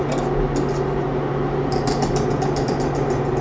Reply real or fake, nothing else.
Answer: real